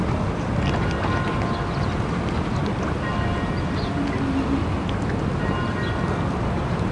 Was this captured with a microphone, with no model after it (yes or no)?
yes